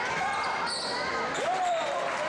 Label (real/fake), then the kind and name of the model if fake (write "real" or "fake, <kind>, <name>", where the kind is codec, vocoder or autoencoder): fake, vocoder, BigVGAN v2